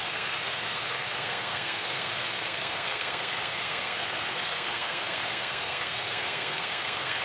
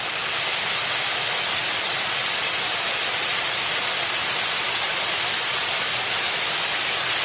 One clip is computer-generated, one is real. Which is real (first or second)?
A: second